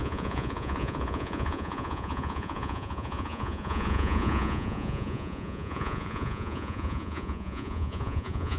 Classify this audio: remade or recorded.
remade